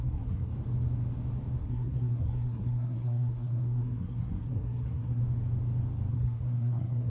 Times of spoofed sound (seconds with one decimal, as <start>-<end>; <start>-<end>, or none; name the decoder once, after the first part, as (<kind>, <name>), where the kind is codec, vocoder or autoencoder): 0.0-0.5 (codec, SNAC); 1.6-5.2; 6.1-7.1

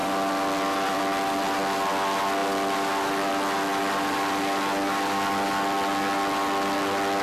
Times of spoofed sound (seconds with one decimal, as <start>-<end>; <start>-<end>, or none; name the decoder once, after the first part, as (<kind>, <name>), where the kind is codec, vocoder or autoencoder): 0.0-1.0 (vocoder, BigVGAN v2); 2.4-3.3; 3.7-5.5

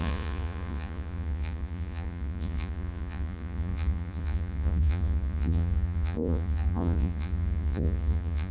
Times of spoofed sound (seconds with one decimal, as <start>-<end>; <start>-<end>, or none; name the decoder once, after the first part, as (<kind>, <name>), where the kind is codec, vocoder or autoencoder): 0.0-8.5 (vocoder, Vocos)

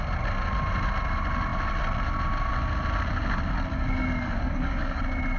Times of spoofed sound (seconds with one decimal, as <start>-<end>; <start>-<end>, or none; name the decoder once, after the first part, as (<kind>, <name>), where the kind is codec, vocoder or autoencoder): 3.7-5.0 (codec, DAC)

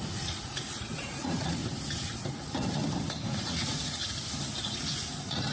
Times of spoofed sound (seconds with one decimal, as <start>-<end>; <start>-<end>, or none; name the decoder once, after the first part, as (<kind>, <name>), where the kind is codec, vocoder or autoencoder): 0.0-1.6 (vocoder, Vocos); 2.3-2.8; 3.4-4.0; 4.6-5.5

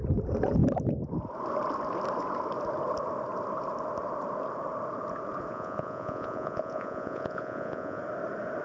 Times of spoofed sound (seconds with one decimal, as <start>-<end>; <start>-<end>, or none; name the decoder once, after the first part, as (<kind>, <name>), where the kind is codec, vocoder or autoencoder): 5.5-8.0 (vocoder, Vocos)

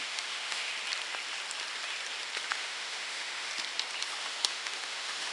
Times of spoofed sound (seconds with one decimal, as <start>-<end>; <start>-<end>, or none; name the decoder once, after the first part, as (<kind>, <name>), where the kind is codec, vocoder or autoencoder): 0.0-0.7 (autoencoder, DAC-VAE); 2.5-3.5; 4.2-5.3